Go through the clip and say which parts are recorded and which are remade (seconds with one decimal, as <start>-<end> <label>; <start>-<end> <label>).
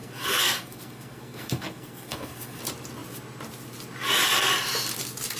0.0-2.6 remade; 2.6-5.4 recorded